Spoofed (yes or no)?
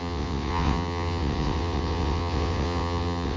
yes